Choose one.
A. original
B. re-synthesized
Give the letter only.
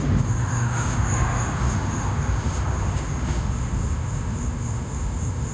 B